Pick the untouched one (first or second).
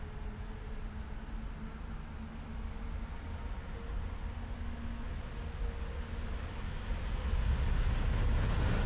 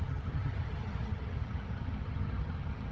first